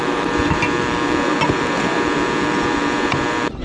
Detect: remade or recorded remade